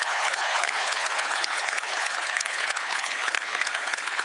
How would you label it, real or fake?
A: fake